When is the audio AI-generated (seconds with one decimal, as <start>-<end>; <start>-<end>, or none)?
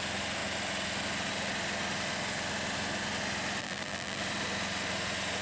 3.6-4.2